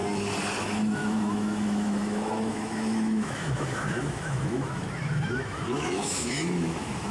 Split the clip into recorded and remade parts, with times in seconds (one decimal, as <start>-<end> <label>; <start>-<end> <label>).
0.0-0.6 recorded; 0.6-7.1 remade